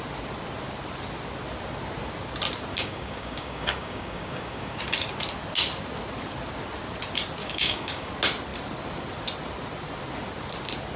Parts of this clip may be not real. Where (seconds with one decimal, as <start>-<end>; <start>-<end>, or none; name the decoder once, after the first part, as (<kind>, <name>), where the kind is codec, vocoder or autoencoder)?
2.7-4.8 (codec, DAC); 7.4-8.1